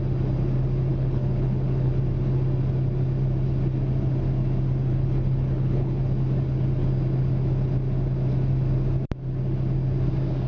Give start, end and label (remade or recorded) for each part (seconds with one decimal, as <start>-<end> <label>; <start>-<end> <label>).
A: 0.0-0.9 recorded; 0.9-1.9 remade; 1.9-4.9 recorded; 4.9-6.0 remade; 6.0-10.5 recorded